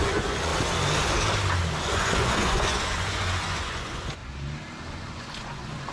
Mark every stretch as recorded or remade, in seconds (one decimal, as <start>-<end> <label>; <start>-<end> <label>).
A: 0.0-0.5 remade; 0.5-1.8 recorded; 1.8-4.2 remade; 4.2-4.9 recorded; 4.9-5.9 remade

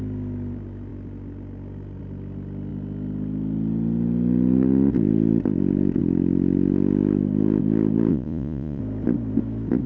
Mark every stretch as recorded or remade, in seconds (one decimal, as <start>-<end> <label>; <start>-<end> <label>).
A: 0.0-8.1 recorded; 8.1-8.8 remade; 8.8-9.9 recorded

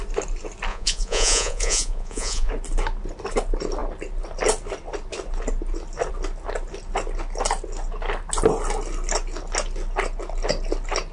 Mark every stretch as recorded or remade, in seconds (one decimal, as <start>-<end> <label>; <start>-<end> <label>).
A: 0.0-0.7 recorded; 0.7-2.5 remade; 2.5-11.1 recorded

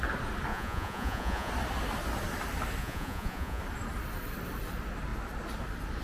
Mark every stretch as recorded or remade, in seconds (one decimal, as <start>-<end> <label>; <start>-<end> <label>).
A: 0.0-0.5 recorded; 0.5-1.5 remade; 1.5-2.8 recorded; 2.8-3.6 remade; 3.6-6.0 recorded

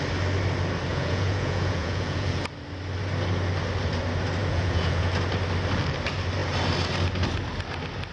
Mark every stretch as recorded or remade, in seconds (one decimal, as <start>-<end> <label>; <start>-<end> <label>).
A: 0.0-0.9 recorded; 0.9-2.4 remade; 2.4-4.4 recorded; 4.4-5.1 remade; 5.1-8.1 recorded

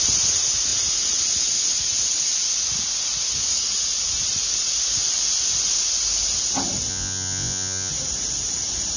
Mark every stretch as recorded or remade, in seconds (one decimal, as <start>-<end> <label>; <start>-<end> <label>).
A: 0.0-6.9 recorded; 6.9-7.9 remade; 7.9-9.0 recorded

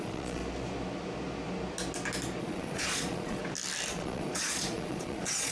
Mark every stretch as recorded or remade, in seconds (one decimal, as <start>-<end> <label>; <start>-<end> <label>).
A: 0.0-0.4 remade; 0.4-2.4 recorded; 2.4-3.4 remade; 3.4-3.9 recorded; 3.9-5.5 remade

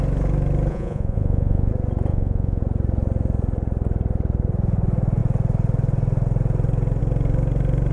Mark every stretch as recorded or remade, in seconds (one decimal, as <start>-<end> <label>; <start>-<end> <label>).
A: 0.0-0.7 recorded; 0.7-1.7 remade; 1.7-2.1 recorded; 2.1-2.6 remade; 2.6-7.9 recorded